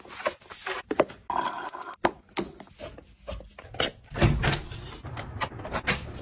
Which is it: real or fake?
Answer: real